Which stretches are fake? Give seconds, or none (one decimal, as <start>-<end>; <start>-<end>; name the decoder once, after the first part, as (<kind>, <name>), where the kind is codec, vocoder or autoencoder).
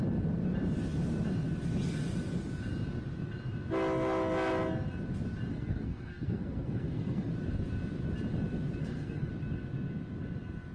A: 5.5-7.3 (codec, SNAC); 8.8-9.3